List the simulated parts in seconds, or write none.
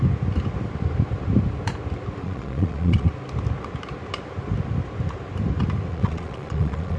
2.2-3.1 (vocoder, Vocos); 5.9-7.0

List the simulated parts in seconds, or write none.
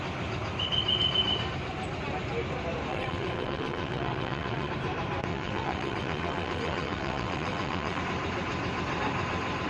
2.9-4.7 (vocoder, WaveNeXt); 5.3-8.0